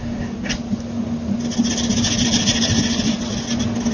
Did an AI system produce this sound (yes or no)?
no